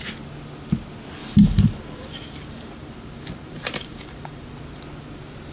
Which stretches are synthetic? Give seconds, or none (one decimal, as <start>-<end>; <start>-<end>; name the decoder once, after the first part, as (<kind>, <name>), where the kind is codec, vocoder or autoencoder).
1.2-4.5 (vocoder, BigVGAN v2)